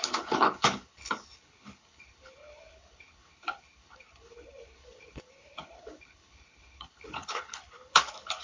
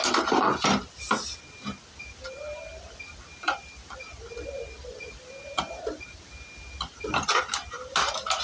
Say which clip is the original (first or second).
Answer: second